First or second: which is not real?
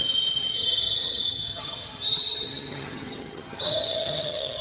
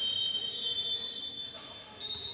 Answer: first